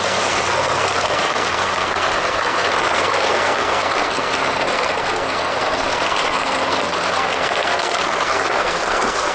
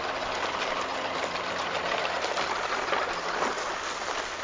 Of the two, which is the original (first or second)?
second